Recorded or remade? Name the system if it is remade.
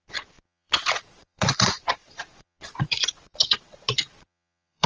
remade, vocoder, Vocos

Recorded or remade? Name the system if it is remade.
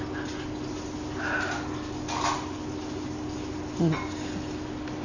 recorded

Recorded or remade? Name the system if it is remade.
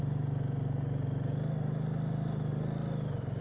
recorded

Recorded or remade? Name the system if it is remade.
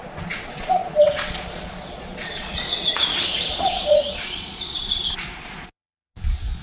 remade, vocoder, Vocos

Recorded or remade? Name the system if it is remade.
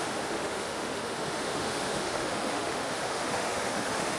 remade, autoencoder, DAC-VAE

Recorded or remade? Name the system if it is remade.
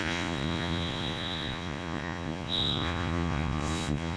remade, vocoder, Vocos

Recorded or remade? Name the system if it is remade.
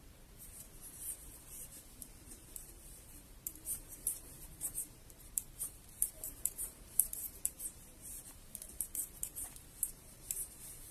remade, vocoder, BigVGAN v2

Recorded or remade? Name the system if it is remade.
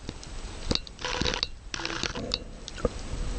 recorded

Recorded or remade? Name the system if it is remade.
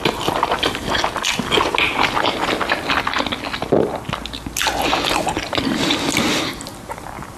recorded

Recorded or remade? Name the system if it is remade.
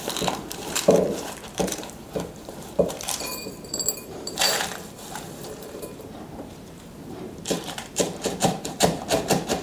remade, vocoder, BigVGAN v2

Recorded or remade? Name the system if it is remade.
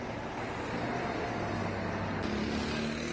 recorded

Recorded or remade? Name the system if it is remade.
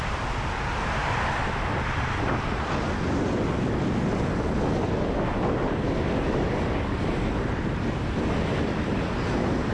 recorded